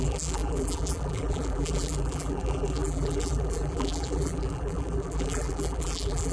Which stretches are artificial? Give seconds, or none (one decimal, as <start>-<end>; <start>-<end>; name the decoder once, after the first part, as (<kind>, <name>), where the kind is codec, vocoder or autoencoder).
0.0-6.3 (vocoder, BigVGAN v2)